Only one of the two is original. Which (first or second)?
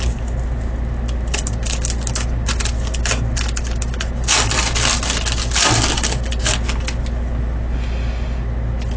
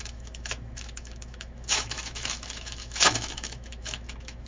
first